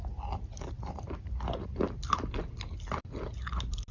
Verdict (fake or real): real